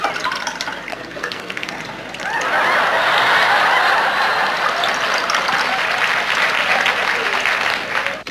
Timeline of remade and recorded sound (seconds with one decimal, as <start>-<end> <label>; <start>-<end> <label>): 0.0-0.9 recorded; 0.9-1.8 remade; 1.8-8.3 recorded